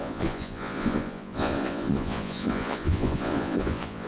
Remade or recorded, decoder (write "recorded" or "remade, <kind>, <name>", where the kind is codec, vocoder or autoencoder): remade, vocoder, Vocos